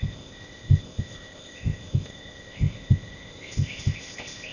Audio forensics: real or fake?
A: fake